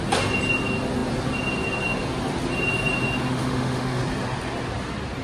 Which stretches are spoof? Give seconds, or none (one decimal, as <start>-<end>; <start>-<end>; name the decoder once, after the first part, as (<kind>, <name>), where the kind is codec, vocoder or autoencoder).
3.3-4.0 (autoencoder, DAC-VAE)